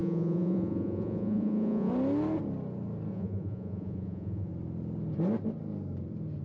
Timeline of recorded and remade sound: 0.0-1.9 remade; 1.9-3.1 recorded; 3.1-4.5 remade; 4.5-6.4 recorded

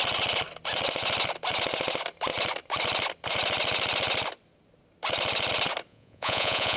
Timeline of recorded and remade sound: 0.0-5.9 recorded; 5.9-6.8 remade

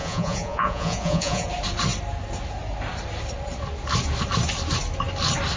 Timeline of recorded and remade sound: 0.0-1.5 remade; 1.5-5.6 recorded

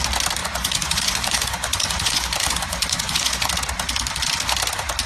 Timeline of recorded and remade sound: 0.0-0.4 recorded; 0.4-3.5 remade; 3.5-5.1 recorded

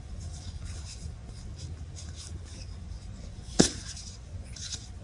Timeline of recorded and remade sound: 0.0-1.5 remade; 1.5-2.8 recorded; 2.8-5.0 remade

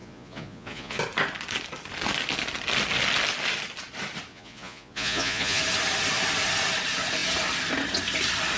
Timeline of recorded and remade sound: 0.0-1.0 remade; 1.0-4.3 recorded; 4.3-5.6 remade; 5.6-8.6 recorded

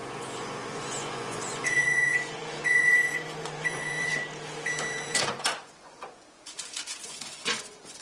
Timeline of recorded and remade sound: 0.0-4.2 remade; 4.2-4.9 recorded; 4.9-8.0 remade